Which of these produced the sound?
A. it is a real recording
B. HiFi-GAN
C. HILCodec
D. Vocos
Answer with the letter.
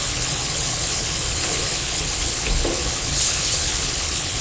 C